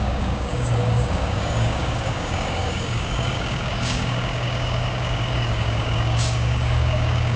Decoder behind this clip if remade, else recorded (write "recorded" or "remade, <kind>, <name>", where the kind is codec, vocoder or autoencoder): remade, codec, DAC